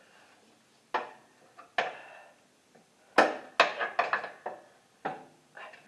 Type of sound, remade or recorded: recorded